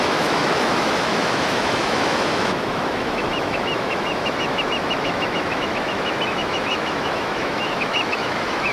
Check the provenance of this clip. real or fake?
fake